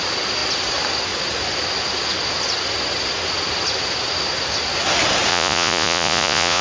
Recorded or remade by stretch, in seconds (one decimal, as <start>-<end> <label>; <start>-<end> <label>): 0.0-5.3 recorded; 5.3-6.6 remade